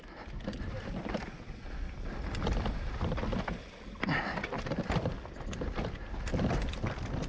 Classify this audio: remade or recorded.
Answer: recorded